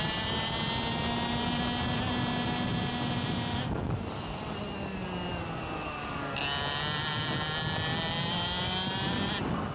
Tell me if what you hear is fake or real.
real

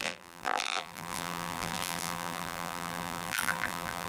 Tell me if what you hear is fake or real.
fake